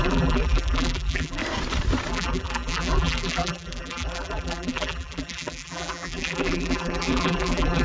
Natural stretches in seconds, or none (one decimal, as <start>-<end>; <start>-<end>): 1.4-2.1